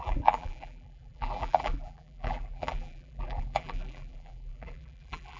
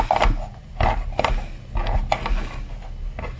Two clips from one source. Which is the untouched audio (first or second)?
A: second